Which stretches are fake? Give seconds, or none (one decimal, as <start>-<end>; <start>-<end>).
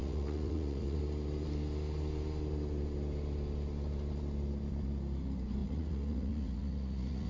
0.0-1.0; 5.6-7.3